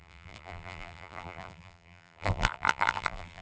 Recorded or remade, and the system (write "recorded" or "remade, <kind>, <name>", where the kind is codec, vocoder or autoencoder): remade, vocoder, BigVGAN v2